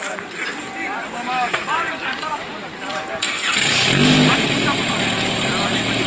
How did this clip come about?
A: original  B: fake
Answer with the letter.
B